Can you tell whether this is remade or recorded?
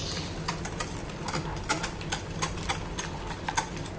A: recorded